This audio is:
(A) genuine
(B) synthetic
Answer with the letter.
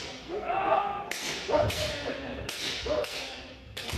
B